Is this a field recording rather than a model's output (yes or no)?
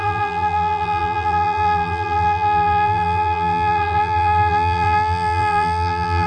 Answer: no